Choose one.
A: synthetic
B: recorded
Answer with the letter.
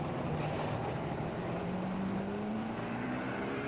A